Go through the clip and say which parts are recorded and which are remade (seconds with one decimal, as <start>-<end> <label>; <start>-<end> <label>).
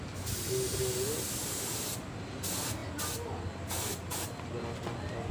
0.0-5.3 recorded